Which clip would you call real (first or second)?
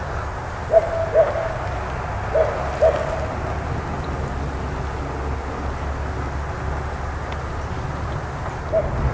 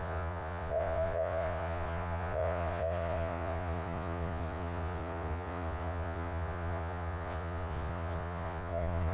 first